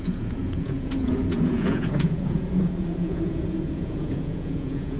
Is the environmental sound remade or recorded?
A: remade